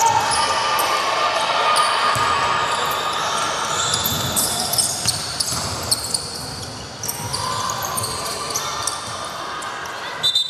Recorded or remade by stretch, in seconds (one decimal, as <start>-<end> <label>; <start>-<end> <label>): 0.0-7.3 recorded; 7.3-9.7 remade; 9.7-10.5 recorded